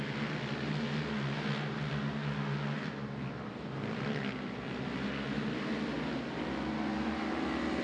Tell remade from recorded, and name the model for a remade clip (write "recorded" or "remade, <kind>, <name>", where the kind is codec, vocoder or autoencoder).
recorded